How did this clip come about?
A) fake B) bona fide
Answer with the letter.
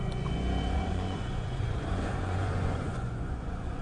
A